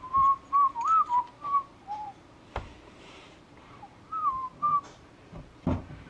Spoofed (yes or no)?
yes